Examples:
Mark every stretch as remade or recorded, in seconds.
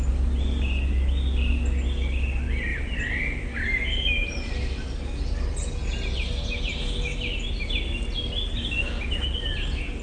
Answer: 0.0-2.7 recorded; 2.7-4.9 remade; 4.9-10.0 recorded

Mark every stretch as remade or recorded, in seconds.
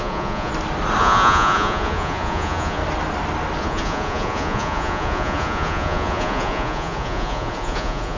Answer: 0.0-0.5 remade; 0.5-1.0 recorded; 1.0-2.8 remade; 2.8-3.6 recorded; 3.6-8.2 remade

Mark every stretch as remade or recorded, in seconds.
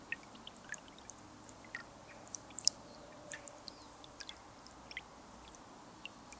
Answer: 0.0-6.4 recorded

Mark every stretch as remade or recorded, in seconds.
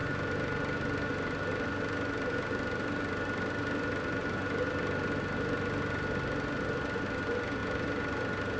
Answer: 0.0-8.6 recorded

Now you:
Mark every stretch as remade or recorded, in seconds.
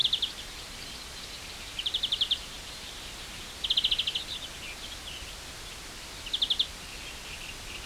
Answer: 0.0-3.1 remade; 3.1-7.9 recorded